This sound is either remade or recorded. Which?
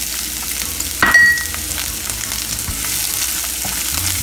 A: recorded